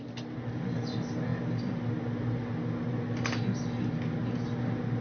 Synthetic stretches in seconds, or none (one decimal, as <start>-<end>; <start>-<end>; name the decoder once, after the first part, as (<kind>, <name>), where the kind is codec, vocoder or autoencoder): none